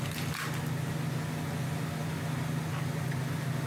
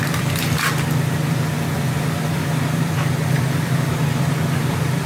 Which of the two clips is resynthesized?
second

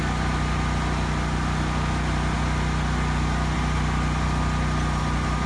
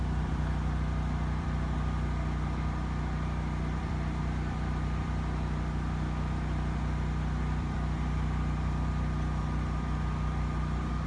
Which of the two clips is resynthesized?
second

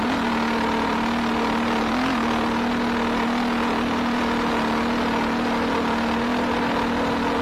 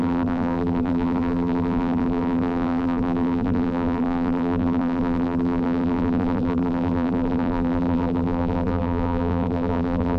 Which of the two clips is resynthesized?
second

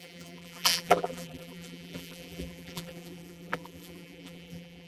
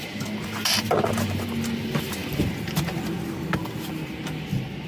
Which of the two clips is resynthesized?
first